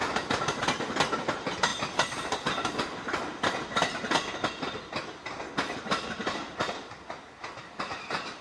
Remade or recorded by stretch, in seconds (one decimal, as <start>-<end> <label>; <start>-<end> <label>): 0.0-8.4 recorded